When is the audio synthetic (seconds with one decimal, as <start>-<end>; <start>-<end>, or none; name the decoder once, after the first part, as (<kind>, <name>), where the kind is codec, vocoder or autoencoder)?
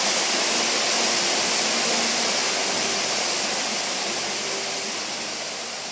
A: none